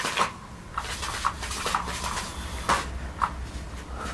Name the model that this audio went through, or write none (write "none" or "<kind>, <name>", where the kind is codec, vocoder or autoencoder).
none